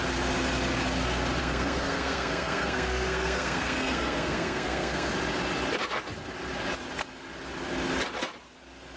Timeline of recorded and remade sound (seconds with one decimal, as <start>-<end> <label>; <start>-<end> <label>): 0.0-1.4 recorded; 1.4-5.1 remade; 5.1-9.0 recorded